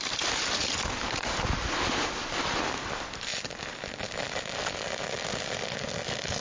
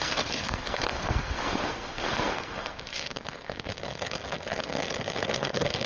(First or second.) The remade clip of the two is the second